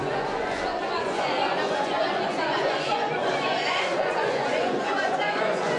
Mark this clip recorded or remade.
remade